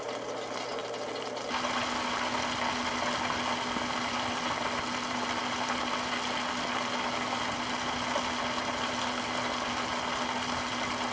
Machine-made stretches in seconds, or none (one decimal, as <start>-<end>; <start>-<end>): none